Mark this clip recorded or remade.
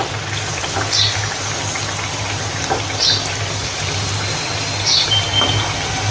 recorded